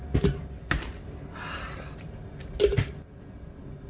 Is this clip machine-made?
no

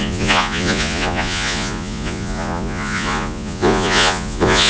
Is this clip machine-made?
yes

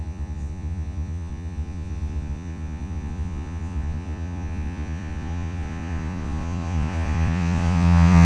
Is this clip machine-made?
yes